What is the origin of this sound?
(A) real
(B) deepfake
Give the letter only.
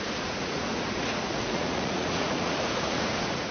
B